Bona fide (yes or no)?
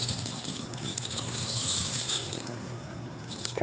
no